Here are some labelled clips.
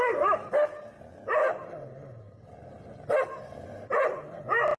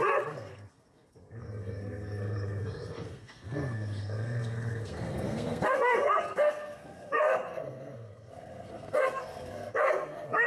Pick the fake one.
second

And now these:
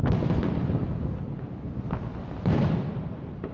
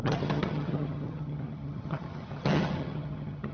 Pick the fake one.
second